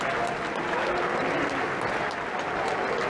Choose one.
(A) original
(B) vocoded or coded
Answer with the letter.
A